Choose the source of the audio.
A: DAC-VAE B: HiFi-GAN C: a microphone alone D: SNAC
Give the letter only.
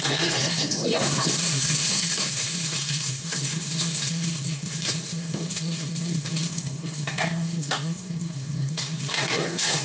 D